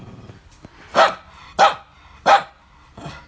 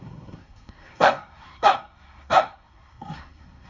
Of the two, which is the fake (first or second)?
second